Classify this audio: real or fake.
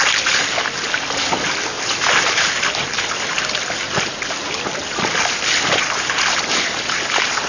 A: real